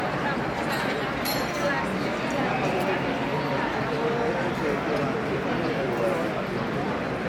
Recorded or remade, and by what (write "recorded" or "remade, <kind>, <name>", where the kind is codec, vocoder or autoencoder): recorded